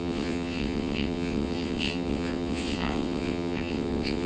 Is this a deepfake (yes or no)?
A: yes